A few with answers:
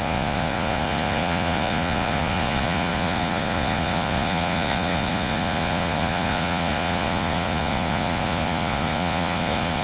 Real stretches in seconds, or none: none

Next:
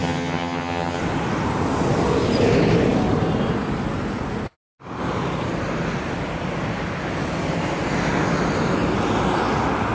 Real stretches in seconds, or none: 1.0-9.9

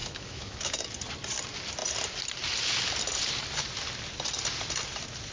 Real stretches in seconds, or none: 0.8-5.3

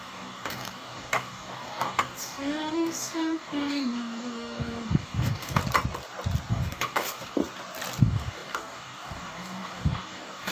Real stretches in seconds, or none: 5.6-6.5; 7.4-8.0

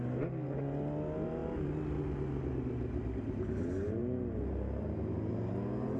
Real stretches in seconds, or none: 0.0-6.0

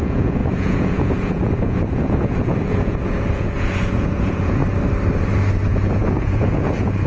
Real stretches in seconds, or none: 4.6-5.7